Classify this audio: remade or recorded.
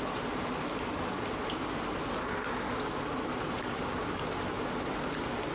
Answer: recorded